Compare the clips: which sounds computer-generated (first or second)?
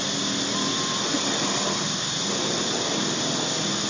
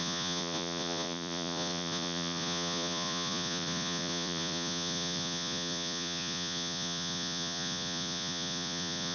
second